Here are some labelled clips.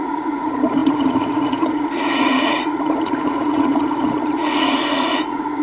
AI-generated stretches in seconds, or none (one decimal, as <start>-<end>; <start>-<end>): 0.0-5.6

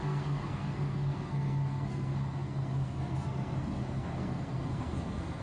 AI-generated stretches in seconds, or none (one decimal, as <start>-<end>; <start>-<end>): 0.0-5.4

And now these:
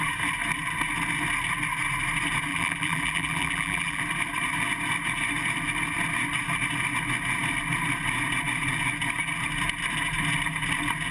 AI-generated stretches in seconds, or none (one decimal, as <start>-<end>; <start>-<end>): 2.5-4.0